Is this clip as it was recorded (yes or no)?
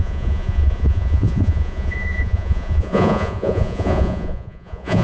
no